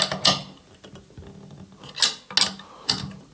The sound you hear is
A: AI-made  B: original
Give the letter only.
B